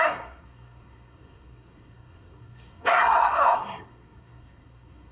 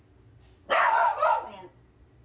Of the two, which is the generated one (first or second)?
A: first